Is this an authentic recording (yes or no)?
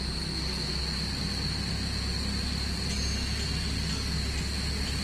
yes